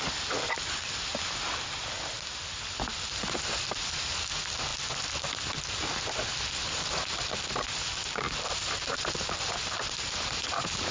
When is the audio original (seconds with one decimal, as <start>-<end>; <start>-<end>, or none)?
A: 0.0-10.9